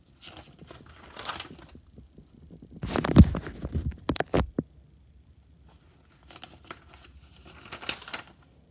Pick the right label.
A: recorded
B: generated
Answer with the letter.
A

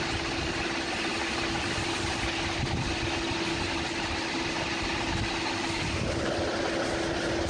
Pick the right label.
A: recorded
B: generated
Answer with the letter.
A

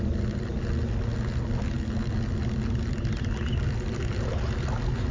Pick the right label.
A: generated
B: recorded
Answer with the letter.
B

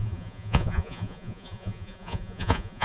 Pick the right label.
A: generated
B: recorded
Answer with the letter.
A